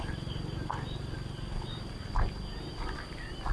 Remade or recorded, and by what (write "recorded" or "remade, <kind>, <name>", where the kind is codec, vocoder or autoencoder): recorded